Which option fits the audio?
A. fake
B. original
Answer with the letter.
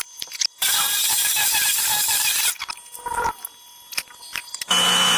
B